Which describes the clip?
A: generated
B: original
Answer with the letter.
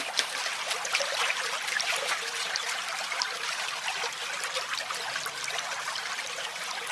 B